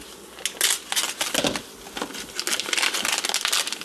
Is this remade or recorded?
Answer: recorded